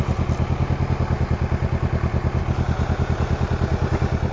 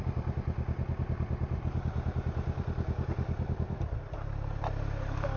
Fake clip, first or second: second